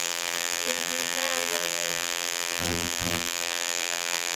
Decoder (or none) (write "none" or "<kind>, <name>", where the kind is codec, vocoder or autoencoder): vocoder, BigVGAN v2